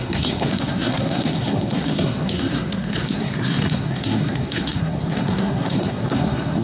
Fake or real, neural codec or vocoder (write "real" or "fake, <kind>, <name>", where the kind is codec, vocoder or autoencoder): fake, codec, SNAC